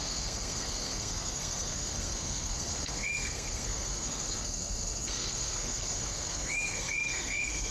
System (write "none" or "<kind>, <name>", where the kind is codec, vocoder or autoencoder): codec, SNAC